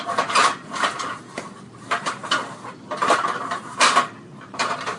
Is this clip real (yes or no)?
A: no